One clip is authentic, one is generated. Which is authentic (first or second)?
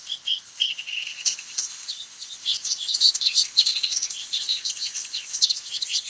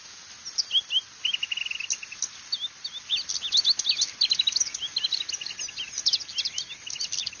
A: second